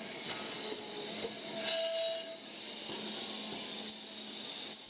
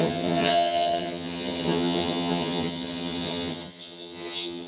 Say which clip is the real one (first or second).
first